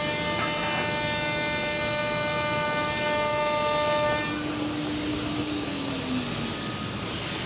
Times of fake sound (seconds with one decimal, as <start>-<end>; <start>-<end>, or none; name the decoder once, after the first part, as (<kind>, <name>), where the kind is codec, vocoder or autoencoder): 5.1-5.9 (codec, DAC)